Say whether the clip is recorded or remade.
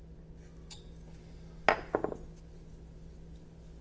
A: recorded